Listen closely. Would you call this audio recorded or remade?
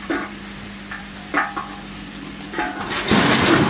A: remade